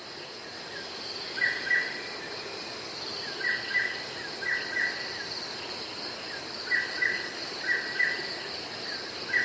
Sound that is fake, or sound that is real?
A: real